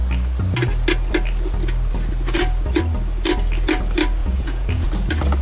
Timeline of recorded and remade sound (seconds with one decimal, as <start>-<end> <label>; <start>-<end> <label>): 0.0-4.2 recorded; 4.2-4.9 remade; 4.9-5.4 recorded